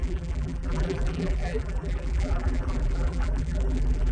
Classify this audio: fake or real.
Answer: fake